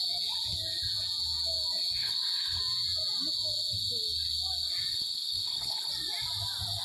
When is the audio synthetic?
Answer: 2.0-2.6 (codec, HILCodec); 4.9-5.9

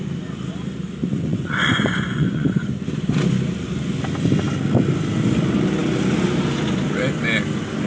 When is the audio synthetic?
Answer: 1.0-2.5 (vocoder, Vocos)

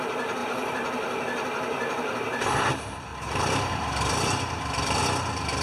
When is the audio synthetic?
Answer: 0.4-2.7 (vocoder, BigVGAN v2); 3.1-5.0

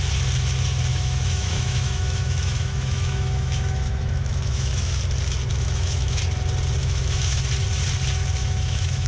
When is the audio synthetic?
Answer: 0.9-5.0 (autoencoder, DAC-VAE); 5.5-6.2; 6.8-7.4; 8.4-9.1

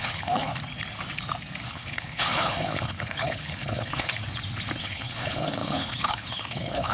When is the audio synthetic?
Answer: 0.0-0.5 (codec, HILCodec); 1.7-4.2; 4.8-6.9